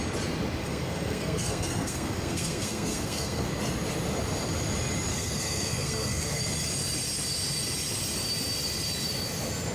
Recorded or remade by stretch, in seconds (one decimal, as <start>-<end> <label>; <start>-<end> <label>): 0.0-0.6 recorded; 0.6-3.5 remade; 3.5-5.1 recorded; 5.1-6.4 remade; 6.4-9.7 recorded